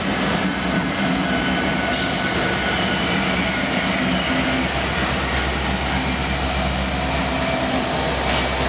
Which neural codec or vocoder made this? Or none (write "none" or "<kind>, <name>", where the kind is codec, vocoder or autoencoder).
none